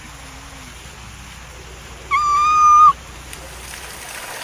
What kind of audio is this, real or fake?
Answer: real